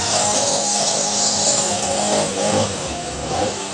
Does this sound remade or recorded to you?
remade